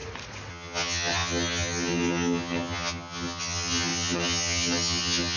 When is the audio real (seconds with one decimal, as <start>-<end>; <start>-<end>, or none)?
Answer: 0.0-0.5